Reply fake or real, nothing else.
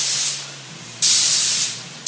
real